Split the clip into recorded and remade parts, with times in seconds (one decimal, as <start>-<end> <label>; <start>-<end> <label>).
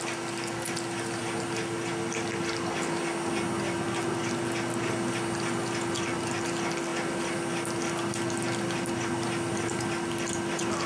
0.0-10.9 recorded